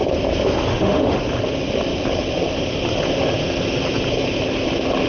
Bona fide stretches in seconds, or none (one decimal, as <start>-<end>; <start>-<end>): 0.0-0.7; 1.2-5.1